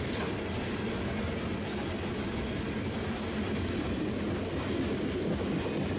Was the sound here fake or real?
real